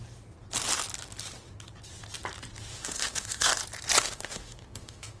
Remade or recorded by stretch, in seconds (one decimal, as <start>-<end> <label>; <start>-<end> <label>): 0.0-2.7 recorded; 2.7-3.5 remade; 3.5-4.0 recorded; 4.0-5.2 remade